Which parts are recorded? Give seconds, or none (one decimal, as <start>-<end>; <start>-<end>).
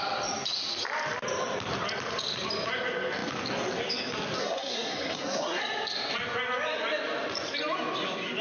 0.0-4.4; 5.6-8.4